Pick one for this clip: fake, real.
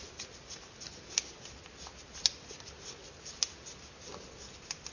real